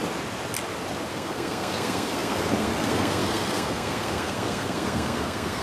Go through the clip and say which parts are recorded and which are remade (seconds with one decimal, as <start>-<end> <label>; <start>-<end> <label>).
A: 0.0-1.1 recorded; 1.1-5.6 remade